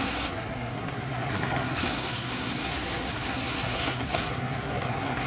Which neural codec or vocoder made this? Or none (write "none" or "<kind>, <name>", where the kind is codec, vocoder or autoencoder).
codec, SNAC